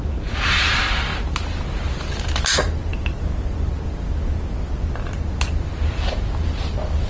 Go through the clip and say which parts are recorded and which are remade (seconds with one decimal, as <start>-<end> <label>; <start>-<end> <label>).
0.0-7.1 recorded